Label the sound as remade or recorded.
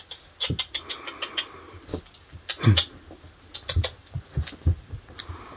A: recorded